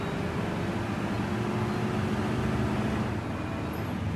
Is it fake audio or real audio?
real